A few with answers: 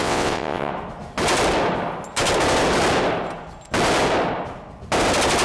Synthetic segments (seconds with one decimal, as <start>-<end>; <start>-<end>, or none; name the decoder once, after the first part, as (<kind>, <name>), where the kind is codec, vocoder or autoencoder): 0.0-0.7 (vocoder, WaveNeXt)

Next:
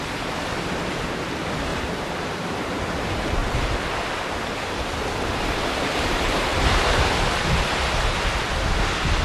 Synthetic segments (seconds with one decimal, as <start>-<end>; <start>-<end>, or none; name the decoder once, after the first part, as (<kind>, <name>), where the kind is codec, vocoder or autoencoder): 1.7-2.6 (vocoder, BigVGAN v2); 3.4-6.9

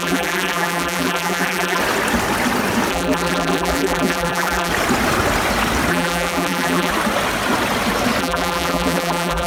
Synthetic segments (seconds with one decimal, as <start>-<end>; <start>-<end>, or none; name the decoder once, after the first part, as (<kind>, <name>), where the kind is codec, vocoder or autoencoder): 0.0-1.8 (vocoder, BigVGAN v2); 2.9-4.7; 5.9-6.9; 8.2-9.5